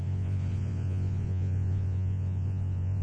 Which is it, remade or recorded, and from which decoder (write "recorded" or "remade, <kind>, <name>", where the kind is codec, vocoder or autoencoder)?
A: remade, vocoder, Vocos